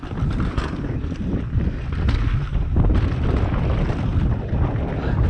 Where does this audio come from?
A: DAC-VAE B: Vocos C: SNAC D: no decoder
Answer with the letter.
D